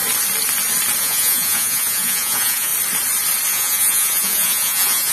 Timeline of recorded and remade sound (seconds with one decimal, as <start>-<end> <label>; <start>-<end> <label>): 0.0-1.0 recorded; 1.0-2.7 remade; 2.7-3.5 recorded; 3.5-5.1 remade

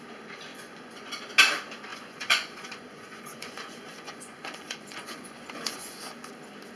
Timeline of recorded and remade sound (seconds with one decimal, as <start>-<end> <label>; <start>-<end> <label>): 0.0-0.5 recorded; 0.5-1.1 remade; 1.1-1.9 recorded; 1.9-6.0 remade; 6.0-6.8 recorded

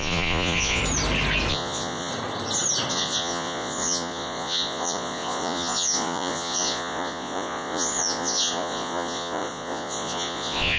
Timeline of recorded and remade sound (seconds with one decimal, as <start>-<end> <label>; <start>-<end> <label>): 0.0-0.8 remade; 0.8-1.5 recorded; 1.5-2.1 remade; 2.1-2.9 recorded; 2.9-10.8 remade

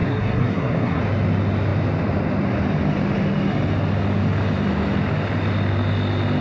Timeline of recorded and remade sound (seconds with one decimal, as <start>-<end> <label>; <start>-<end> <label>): 0.0-1.0 remade; 1.0-6.4 recorded

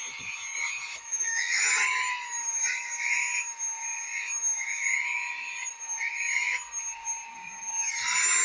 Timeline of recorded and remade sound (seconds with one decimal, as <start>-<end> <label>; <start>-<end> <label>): 0.0-0.9 recorded; 0.9-1.6 remade; 1.6-8.4 recorded